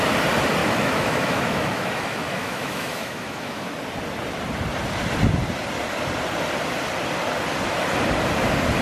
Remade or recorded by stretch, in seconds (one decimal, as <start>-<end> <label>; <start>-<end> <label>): 0.0-0.6 recorded; 0.6-3.7 remade; 3.7-8.8 recorded